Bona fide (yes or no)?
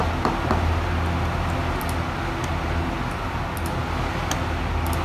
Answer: yes